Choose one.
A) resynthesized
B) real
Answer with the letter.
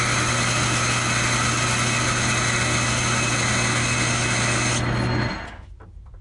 B